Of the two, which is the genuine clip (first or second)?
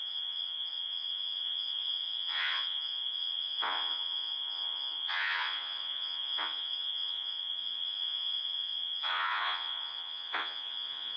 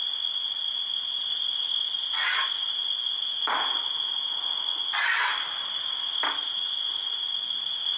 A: second